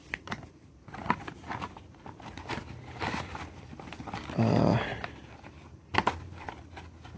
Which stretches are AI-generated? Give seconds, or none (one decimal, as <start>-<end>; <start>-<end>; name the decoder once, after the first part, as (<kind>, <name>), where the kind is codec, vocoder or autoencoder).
0.6-2.2 (vocoder, BigVGAN v2); 4.9-6.5